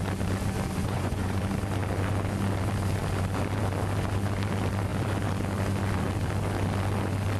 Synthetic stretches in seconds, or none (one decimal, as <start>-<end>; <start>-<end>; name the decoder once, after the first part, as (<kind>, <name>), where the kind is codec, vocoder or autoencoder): 0.8-1.4 (vocoder, Vocos)